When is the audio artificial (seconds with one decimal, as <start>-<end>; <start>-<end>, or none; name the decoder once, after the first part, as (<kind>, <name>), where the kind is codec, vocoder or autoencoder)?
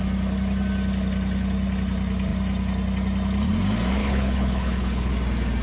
4.0-5.1 (codec, HILCodec)